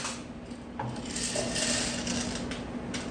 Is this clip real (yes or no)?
yes